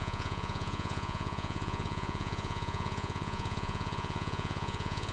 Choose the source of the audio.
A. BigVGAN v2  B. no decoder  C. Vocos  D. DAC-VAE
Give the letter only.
C